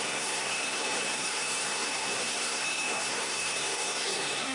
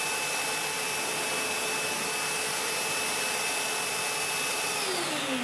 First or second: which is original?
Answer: second